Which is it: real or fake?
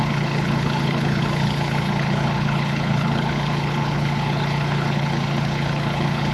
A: fake